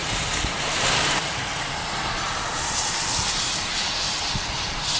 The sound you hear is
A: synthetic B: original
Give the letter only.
A